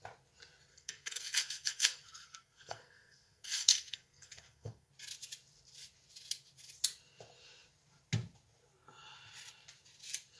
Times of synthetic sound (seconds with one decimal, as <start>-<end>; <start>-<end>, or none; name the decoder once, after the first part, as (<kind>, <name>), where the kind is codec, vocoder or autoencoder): 0.7-4.9 (codec, SNAC)